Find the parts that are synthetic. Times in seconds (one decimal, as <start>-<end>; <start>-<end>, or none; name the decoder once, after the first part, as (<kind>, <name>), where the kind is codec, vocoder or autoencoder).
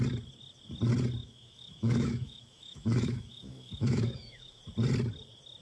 1.2-4.6 (autoencoder, DAC-VAE)